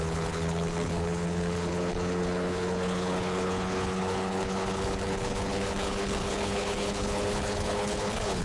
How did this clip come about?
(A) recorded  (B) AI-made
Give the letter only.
B